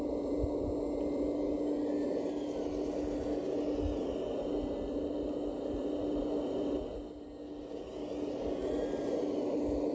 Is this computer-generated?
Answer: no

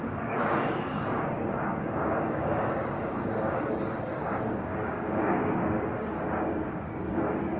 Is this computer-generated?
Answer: yes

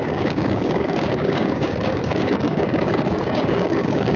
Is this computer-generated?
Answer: yes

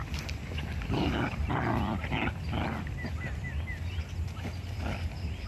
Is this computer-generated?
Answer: no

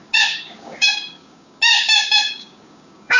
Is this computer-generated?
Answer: yes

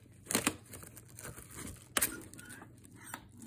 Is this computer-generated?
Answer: no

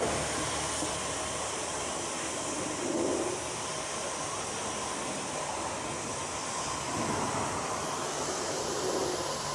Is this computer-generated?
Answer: no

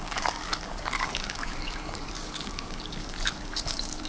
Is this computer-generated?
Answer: yes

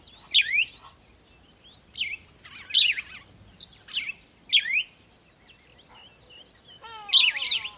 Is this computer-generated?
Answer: no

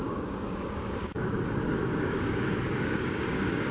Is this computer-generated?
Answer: yes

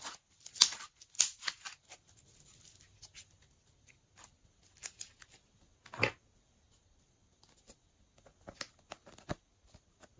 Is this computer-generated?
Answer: no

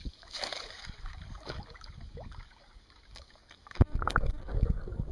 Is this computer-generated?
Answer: yes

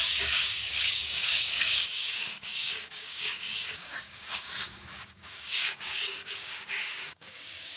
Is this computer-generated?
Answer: yes